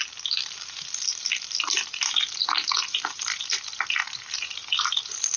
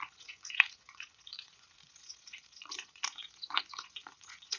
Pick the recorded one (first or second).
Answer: first